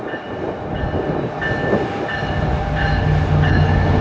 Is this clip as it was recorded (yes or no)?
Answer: yes